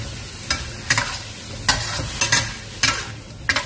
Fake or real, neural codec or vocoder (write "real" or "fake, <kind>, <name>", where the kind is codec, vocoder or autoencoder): real